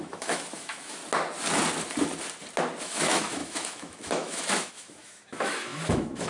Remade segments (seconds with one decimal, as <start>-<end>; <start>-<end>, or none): 0.0-1.0; 2.8-6.3